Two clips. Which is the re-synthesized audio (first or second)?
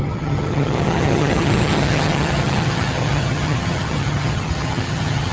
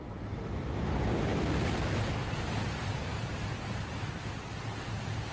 first